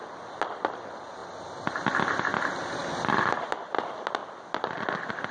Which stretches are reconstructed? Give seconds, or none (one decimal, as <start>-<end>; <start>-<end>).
none